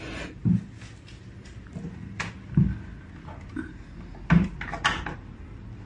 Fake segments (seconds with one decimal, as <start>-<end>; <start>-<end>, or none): none